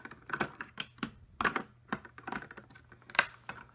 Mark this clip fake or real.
real